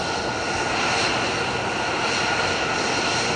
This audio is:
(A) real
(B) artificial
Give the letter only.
A